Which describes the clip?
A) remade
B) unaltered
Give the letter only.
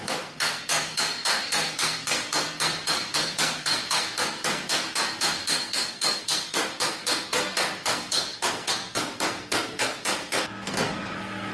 A